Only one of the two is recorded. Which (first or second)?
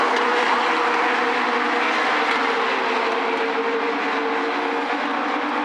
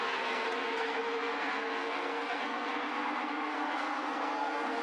first